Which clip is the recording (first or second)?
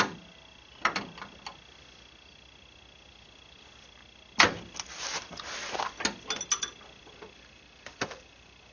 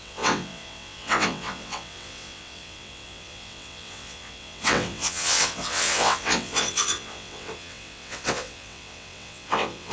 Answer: first